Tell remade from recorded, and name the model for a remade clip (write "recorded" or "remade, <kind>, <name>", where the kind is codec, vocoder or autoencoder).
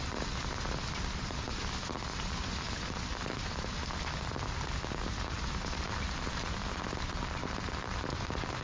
recorded